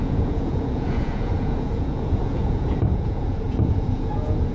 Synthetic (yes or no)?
yes